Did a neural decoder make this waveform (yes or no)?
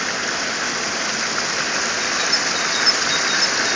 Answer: no